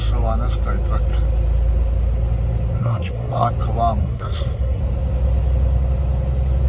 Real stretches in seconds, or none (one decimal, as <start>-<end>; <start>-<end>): 0.0-2.8; 3.5-4.0; 4.8-6.7